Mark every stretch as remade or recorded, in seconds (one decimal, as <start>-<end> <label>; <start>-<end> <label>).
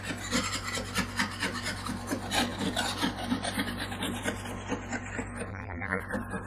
0.0-5.5 recorded; 5.5-6.0 remade; 6.0-6.5 recorded